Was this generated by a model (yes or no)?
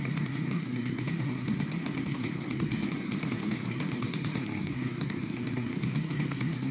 yes